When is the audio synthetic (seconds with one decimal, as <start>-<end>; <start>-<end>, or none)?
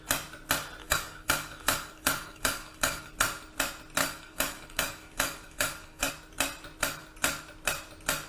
0.8-3.1; 4.0-6.1